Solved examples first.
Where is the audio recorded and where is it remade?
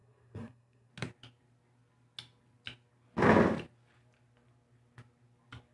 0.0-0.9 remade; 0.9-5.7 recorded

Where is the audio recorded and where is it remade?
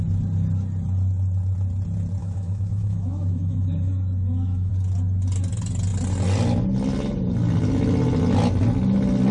0.0-2.2 recorded; 2.2-4.7 remade; 4.7-9.3 recorded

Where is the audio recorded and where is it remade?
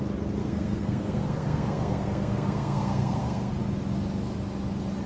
0.0-0.4 recorded; 0.4-3.5 remade; 3.5-5.1 recorded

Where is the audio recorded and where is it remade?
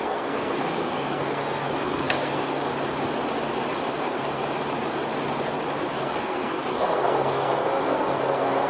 0.0-2.7 remade; 2.7-4.0 recorded; 4.0-4.4 remade; 4.4-5.9 recorded; 5.9-8.7 remade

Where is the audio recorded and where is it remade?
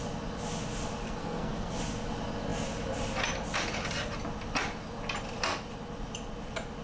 0.0-1.0 recorded; 1.0-1.8 remade; 1.8-6.8 recorded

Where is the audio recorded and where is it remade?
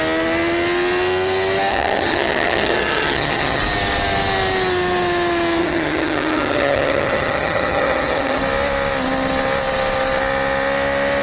0.0-1.7 recorded; 1.7-3.6 remade; 3.6-5.6 recorded; 5.6-8.4 remade; 8.4-11.2 recorded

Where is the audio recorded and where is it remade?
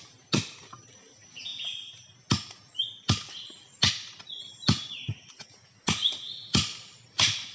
0.0-6.4 recorded; 6.4-7.5 remade